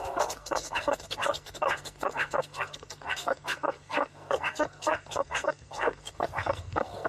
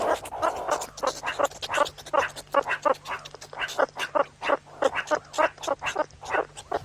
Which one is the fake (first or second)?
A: first